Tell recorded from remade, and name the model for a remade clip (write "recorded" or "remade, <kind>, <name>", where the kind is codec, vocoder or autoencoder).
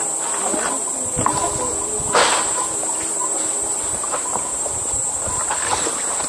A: recorded